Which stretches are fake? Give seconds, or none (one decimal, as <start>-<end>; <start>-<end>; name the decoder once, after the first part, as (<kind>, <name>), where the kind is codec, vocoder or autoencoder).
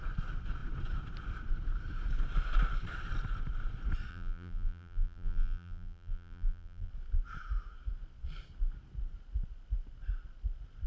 4.1-6.9 (vocoder, BigVGAN v2)